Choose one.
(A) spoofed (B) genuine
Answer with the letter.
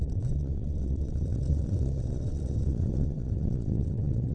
A